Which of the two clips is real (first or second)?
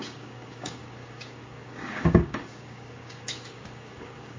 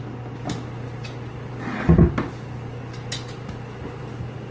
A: second